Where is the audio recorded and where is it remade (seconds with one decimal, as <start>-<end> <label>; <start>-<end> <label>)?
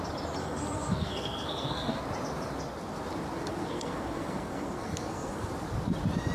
0.0-0.4 recorded; 0.4-2.0 remade; 2.0-3.5 recorded; 3.5-5.5 remade; 5.5-6.3 recorded